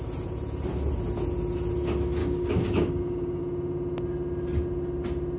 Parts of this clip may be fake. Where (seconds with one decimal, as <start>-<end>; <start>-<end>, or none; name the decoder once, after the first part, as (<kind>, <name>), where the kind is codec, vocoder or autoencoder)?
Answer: 2.2-3.4 (codec, DAC)